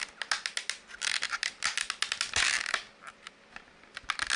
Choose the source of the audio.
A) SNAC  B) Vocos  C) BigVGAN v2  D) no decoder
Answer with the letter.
D